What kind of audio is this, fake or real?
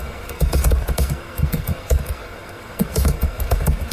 fake